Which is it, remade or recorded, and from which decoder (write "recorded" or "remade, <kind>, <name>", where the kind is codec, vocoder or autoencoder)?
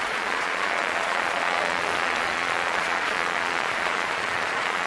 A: remade, vocoder, Vocos